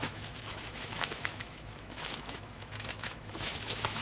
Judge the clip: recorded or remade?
remade